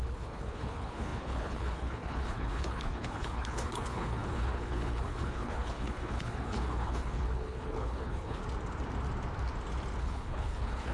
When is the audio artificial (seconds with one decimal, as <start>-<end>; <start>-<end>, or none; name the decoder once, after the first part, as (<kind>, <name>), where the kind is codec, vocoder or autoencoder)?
0.0-8.4 (codec, HILCodec); 10.0-10.9